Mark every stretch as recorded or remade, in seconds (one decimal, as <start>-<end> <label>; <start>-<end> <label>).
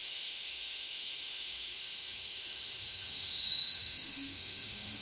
0.0-5.0 remade